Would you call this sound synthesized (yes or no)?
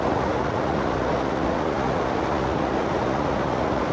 yes